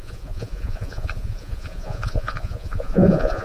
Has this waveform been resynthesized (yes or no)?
yes